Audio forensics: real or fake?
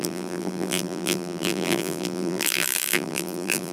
fake